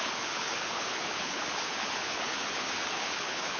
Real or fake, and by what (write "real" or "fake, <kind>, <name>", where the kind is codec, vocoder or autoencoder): fake, codec, HILCodec